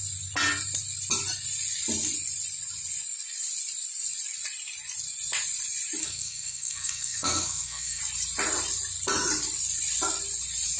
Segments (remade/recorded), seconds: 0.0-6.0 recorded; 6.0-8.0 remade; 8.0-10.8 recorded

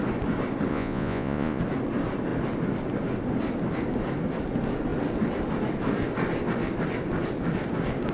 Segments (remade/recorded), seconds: 0.0-0.7 recorded; 0.7-1.6 remade; 1.6-8.1 recorded

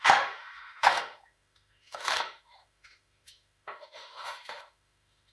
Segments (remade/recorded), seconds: 0.0-5.3 remade

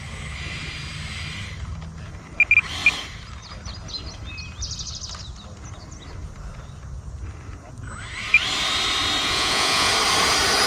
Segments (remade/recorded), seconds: 0.0-9.2 recorded; 9.2-9.9 remade; 9.9-10.7 recorded

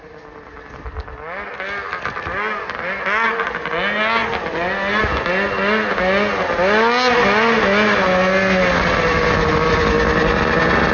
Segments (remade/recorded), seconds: 0.0-10.9 recorded

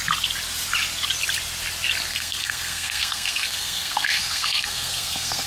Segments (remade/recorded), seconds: 0.0-2.1 recorded; 2.1-5.5 remade

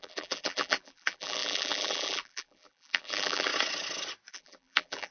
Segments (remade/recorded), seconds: 0.0-3.5 remade; 3.5-4.3 recorded; 4.3-5.1 remade